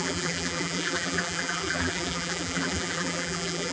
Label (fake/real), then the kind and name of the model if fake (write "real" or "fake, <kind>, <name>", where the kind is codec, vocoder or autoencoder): fake, vocoder, BigVGAN v2